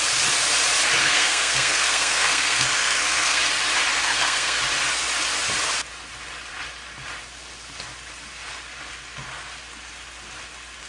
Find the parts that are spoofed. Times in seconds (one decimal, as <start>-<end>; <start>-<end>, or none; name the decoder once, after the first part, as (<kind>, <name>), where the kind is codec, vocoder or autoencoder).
1.0-3.4 (codec, SNAC); 4.0-4.6